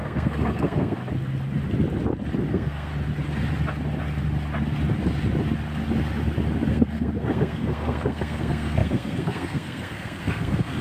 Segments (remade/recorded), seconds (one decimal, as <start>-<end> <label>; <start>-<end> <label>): 0.0-1.0 remade; 1.0-2.5 recorded; 2.5-2.9 remade; 2.9-6.7 recorded; 6.7-10.8 remade